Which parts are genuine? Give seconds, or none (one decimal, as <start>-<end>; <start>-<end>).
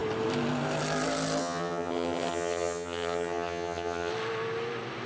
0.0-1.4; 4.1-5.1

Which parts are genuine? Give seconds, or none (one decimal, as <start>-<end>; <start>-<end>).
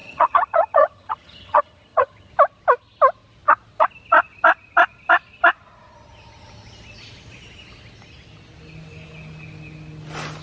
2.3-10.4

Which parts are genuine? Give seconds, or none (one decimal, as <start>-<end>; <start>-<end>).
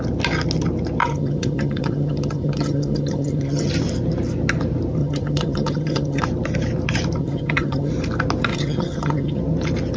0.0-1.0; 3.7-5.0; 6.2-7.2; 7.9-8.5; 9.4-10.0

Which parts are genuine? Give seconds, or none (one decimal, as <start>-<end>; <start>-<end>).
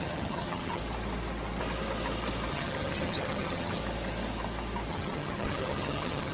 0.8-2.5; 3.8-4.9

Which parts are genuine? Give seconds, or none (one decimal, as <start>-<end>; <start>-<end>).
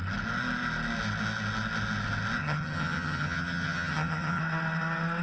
0.0-2.4; 4.4-5.2